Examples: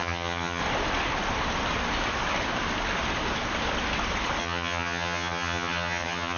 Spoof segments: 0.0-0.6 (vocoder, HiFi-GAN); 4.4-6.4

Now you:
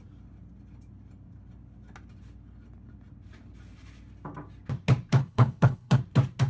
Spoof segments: 5.1-6.0 (codec, HILCodec)

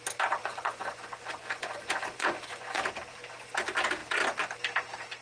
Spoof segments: 0.4-2.9 (vocoder, Vocos)

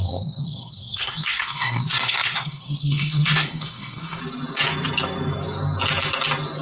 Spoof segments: 0.0-4.2 (codec, SNAC)

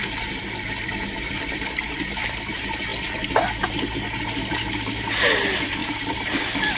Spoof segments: 0.0-2.9 (vocoder, BigVGAN v2); 4.3-6.8